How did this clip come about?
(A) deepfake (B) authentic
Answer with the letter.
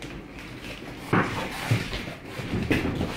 B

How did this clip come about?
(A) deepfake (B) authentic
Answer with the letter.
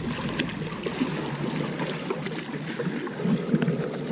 B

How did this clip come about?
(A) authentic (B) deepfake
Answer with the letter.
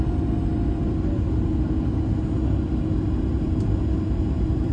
A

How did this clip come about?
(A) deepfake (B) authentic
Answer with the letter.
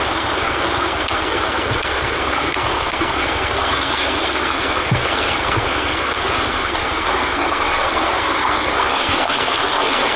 A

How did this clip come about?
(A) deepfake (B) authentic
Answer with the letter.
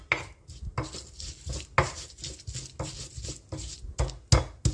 B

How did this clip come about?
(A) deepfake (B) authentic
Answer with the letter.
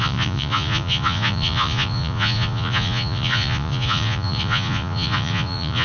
A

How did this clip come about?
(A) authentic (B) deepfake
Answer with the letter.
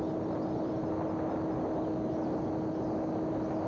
A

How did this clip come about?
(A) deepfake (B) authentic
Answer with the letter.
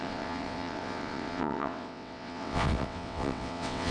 A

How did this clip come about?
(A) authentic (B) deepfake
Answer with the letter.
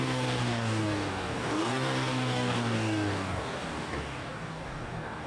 B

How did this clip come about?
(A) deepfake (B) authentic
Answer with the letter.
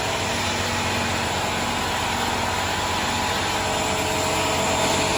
B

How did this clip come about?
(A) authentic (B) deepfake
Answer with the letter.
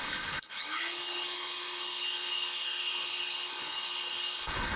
B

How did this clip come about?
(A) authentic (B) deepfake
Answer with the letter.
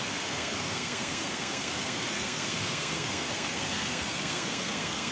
B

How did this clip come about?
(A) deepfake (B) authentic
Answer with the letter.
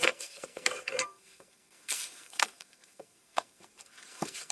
A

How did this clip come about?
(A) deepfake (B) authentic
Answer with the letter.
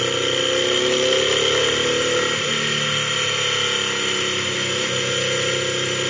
B